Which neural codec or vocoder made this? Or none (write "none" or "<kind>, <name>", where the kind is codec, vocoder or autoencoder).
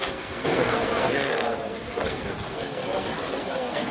codec, SNAC